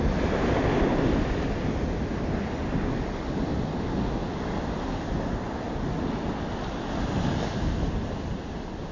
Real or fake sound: real